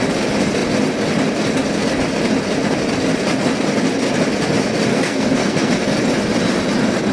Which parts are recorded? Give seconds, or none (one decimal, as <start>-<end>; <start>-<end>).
0.0-4.9; 5.7-7.1

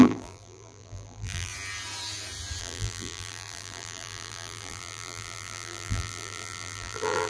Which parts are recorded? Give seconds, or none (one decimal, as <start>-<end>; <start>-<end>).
1.5-2.6

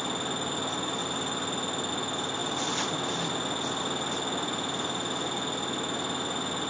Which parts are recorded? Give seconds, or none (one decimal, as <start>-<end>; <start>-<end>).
0.0-6.7

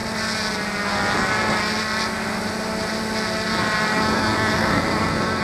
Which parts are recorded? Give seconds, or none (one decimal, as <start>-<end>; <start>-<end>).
0.0-3.9